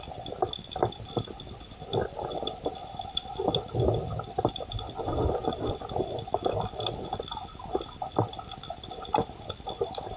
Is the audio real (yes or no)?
yes